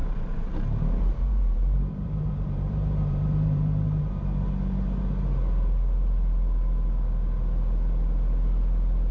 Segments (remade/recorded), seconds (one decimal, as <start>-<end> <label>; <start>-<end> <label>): 0.0-4.0 remade; 4.0-9.1 recorded